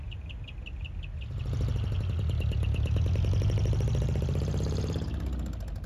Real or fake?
real